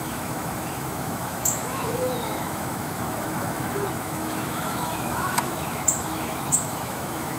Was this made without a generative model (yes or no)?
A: no